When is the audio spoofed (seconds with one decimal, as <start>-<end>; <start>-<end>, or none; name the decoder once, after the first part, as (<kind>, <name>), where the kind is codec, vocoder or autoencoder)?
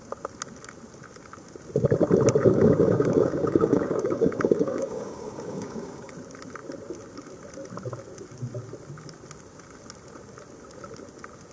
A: 2.4-6.1 (codec, DAC)